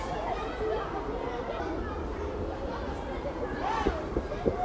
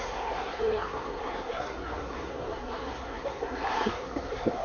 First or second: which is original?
first